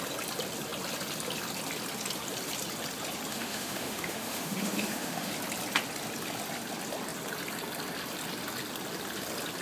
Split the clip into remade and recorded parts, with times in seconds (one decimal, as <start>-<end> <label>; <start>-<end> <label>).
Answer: 0.0-3.3 recorded; 3.3-5.3 remade; 5.3-9.6 recorded